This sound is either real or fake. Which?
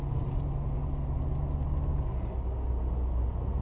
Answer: real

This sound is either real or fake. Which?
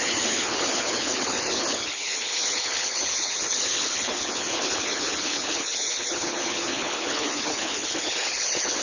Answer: fake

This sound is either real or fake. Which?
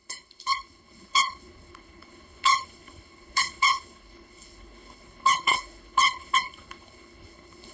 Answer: fake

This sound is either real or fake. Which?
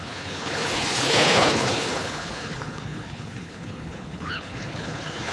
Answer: fake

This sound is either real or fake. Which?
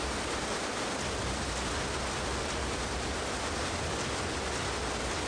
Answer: real